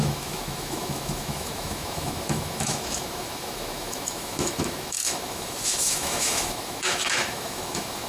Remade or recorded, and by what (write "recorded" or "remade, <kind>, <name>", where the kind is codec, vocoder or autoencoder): remade, autoencoder, DAC-VAE